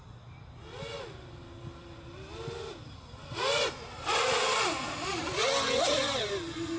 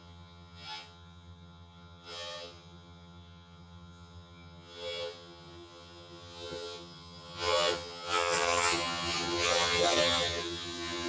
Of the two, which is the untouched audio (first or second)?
first